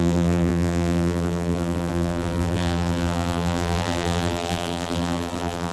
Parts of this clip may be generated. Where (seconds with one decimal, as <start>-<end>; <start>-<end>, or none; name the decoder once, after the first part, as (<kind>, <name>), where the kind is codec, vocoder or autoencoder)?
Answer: 0.0-5.7 (vocoder, BigVGAN v2)